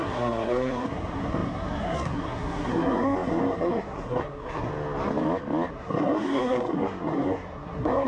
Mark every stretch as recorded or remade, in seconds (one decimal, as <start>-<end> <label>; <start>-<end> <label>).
0.0-4.7 remade; 4.7-5.7 recorded; 5.7-8.1 remade